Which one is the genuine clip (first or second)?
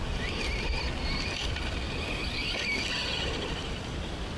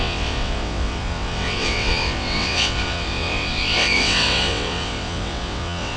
first